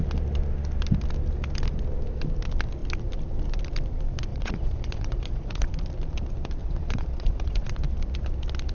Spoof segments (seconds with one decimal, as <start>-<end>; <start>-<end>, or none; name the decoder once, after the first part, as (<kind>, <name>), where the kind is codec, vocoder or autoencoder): 4.3-5.7 (vocoder, Vocos); 6.6-7.8

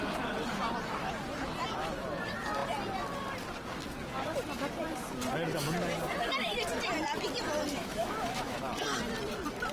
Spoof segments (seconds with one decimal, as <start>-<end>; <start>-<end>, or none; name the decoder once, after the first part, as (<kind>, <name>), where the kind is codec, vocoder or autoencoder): 7.7-8.6 (autoencoder, DAC-VAE)

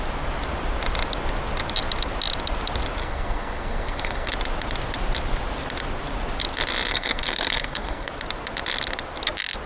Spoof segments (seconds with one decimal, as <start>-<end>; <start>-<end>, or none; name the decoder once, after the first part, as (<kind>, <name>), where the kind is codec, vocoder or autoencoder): 3.0-4.3 (codec, SNAC); 6.9-8.1

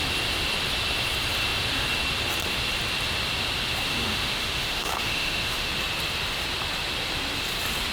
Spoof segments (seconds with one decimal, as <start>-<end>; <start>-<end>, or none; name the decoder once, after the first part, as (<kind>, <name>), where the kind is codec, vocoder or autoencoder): 3.9-5.7 (autoencoder, DAC-VAE)

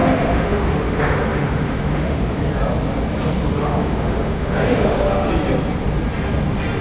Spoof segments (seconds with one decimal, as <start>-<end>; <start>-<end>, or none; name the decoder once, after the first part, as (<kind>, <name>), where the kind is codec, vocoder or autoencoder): 0.0-2.4 (autoencoder, DAC-VAE); 3.6-5.3

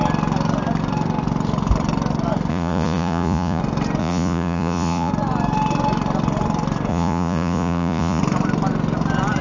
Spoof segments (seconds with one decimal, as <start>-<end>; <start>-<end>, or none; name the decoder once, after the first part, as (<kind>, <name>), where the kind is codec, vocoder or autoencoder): 2.5-3.6 (vocoder, Vocos); 4.0-5.1; 6.9-8.2